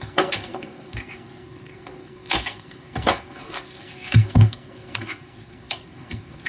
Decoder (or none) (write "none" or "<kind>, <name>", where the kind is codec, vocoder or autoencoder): codec, SNAC